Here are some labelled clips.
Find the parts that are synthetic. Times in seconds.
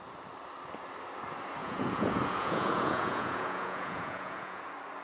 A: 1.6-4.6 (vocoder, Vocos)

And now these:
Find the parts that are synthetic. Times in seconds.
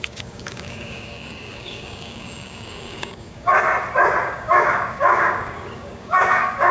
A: 0.0-3.5 (codec, DAC); 4.2-6.7